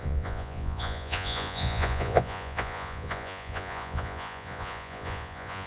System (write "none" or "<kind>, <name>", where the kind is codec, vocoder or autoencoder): vocoder, Vocos